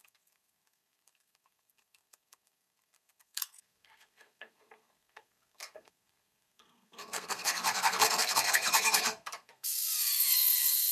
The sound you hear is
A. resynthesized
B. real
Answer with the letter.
A